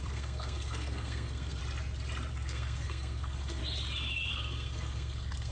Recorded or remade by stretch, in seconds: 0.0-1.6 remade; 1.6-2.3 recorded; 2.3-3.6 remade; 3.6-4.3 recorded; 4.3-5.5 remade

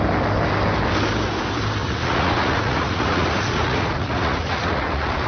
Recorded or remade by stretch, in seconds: 0.0-1.8 recorded; 1.8-5.3 remade

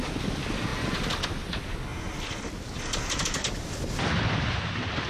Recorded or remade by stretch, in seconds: 0.0-5.1 recorded

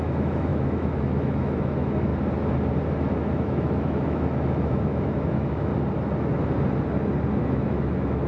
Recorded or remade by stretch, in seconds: 0.0-2.1 remade; 2.1-3.0 recorded; 3.0-5.7 remade; 5.7-7.4 recorded; 7.4-8.3 remade